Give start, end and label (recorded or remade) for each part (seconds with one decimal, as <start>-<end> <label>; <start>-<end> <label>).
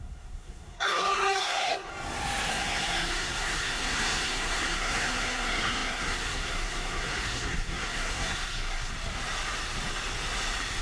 0.0-1.9 remade; 1.9-2.5 recorded; 2.5-8.9 remade; 8.9-10.8 recorded